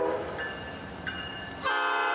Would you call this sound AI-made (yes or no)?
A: no